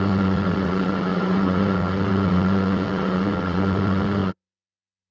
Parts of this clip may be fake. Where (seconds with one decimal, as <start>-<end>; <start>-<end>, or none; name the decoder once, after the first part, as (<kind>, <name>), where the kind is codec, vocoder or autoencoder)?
0.0-5.1 (vocoder, WaveNeXt)